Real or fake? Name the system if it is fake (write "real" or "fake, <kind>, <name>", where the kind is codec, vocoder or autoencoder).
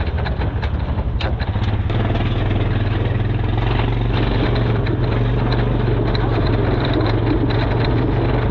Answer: real